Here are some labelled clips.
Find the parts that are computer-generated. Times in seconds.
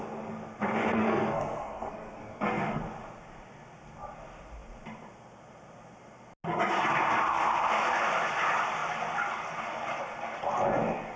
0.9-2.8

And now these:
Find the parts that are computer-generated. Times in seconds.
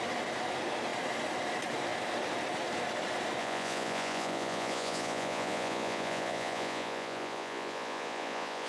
3.4-8.7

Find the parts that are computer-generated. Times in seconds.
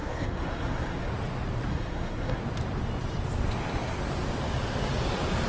0.0-1.1; 1.7-2.4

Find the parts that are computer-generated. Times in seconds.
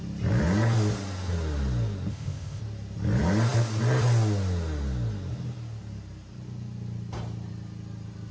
2.1-2.6